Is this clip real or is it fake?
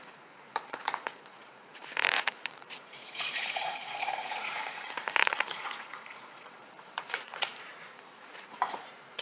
fake